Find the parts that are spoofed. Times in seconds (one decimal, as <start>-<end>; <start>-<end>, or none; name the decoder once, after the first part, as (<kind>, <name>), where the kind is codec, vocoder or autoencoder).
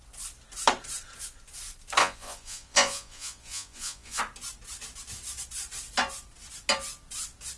2.0-4.2 (vocoder, Vocos)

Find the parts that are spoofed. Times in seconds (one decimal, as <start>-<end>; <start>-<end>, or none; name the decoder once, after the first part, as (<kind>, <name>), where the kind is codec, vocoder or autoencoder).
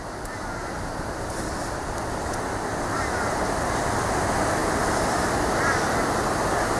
0.6-2.3 (vocoder, BigVGAN v2); 4.6-5.5